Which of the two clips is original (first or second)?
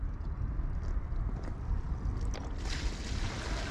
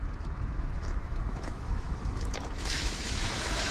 first